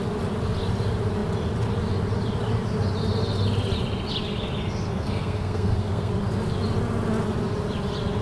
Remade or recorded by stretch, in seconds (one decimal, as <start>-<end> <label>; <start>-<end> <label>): 0.0-4.9 recorded; 4.9-6.1 remade; 6.1-8.2 recorded